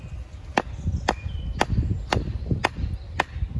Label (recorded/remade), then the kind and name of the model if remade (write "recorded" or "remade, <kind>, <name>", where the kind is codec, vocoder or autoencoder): recorded